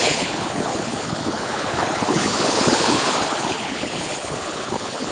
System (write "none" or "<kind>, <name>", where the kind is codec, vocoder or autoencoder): codec, HILCodec